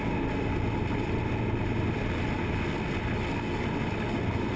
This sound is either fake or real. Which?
real